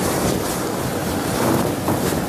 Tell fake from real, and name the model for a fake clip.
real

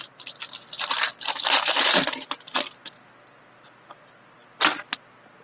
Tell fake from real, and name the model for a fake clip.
real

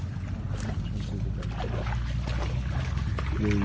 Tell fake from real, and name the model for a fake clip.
real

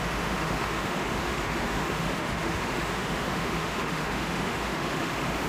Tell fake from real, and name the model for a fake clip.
fake, autoencoder, DAC-VAE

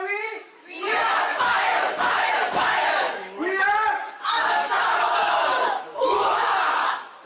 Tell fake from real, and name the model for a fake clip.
fake, autoencoder, DAC-VAE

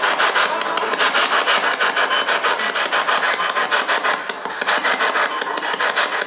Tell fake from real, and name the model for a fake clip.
real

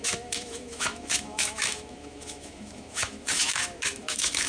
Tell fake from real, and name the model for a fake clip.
fake, autoencoder, DAC-VAE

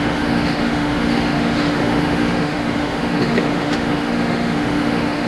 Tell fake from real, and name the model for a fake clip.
fake, autoencoder, DAC-VAE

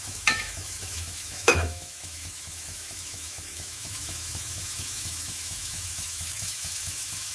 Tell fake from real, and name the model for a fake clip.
fake, autoencoder, DAC-VAE